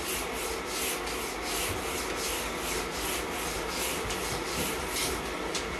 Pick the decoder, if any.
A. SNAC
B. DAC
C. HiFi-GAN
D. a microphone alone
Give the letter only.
D